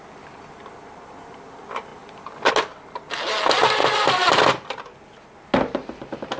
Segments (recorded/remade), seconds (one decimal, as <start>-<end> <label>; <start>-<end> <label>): 0.0-6.4 recorded